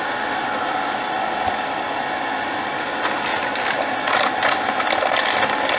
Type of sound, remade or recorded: recorded